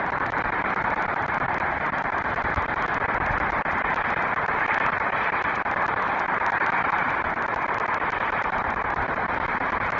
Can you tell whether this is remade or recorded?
remade